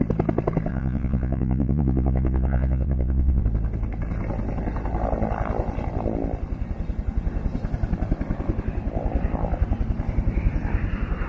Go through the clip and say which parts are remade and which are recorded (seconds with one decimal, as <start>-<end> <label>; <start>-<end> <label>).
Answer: 0.0-0.7 recorded; 0.7-3.4 remade; 3.4-11.3 recorded